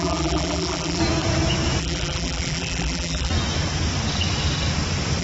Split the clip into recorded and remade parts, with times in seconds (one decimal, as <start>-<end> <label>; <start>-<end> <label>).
0.0-1.0 remade; 1.0-1.8 recorded; 1.8-3.3 remade; 3.3-5.2 recorded